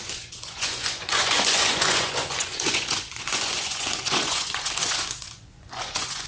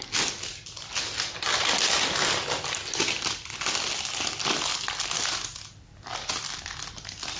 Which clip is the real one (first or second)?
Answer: second